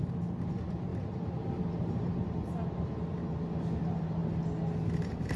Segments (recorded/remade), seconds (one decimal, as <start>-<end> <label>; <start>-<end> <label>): 0.0-3.2 remade; 3.2-3.8 recorded; 3.8-4.2 remade; 4.2-5.0 recorded; 5.0-5.4 remade